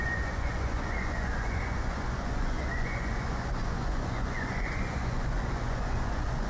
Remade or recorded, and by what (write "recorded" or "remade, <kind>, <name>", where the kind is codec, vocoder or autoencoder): remade, vocoder, Vocos